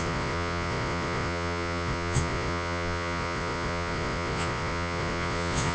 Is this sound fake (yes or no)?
yes